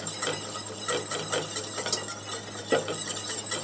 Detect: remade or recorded recorded